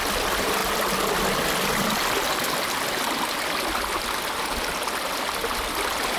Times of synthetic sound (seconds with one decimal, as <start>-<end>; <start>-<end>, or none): none